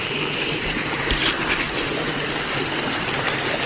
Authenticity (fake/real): real